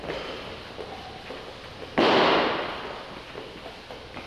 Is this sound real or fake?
real